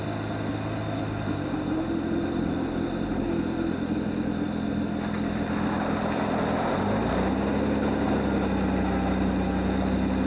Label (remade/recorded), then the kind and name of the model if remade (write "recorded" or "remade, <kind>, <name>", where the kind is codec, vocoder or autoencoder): recorded